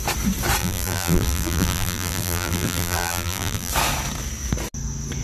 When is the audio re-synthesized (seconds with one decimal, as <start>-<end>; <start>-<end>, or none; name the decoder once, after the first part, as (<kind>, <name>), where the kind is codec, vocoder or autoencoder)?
0.6-3.7 (vocoder, BigVGAN v2)